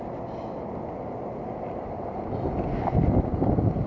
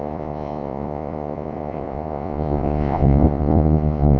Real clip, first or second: first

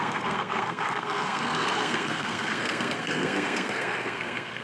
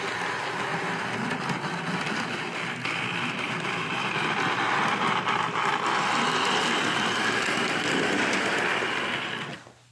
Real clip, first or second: second